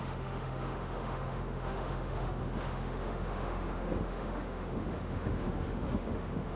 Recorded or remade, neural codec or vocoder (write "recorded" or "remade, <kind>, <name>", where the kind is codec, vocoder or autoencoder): remade, autoencoder, DAC-VAE